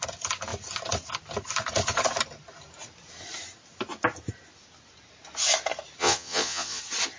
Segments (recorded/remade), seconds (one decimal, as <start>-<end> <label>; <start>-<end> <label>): 0.0-6.0 recorded; 6.0-6.8 remade; 6.8-7.2 recorded